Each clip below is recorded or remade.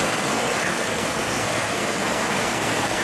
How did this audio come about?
remade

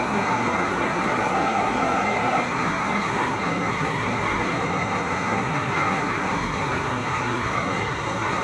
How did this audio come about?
remade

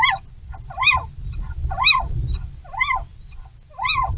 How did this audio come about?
recorded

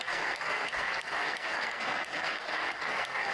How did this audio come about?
remade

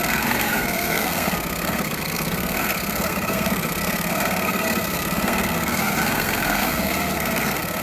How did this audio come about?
remade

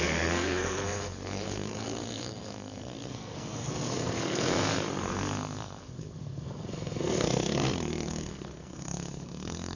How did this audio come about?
remade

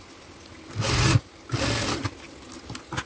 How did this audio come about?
recorded